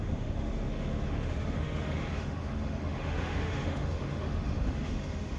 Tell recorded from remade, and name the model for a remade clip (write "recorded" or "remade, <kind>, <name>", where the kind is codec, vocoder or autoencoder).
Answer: remade, autoencoder, DAC-VAE